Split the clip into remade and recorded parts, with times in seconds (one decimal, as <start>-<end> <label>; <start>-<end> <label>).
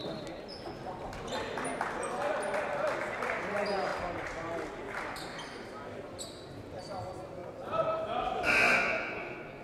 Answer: 0.0-9.6 recorded